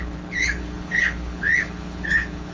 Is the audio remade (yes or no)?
yes